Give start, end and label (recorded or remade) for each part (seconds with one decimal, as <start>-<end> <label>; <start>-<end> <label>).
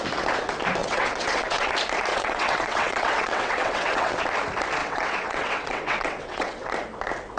0.0-0.8 recorded; 0.8-1.7 remade; 1.7-2.1 recorded; 2.1-4.2 remade; 4.2-4.8 recorded; 4.8-6.7 remade; 6.7-7.4 recorded